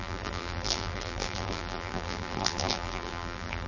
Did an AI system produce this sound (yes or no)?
yes